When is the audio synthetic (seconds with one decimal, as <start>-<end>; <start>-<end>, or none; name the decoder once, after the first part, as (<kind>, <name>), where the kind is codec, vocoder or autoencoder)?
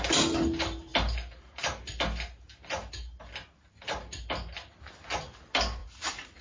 5.8-6.4 (vocoder, Vocos)